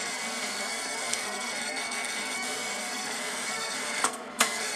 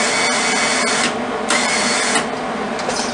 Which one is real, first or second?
second